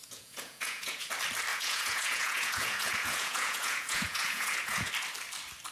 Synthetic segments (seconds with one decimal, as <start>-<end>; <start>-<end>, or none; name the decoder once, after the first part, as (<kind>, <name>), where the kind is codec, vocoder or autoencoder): 0.0-1.1 (vocoder, Vocos); 1.5-4.9